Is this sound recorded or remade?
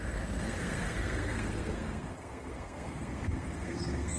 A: remade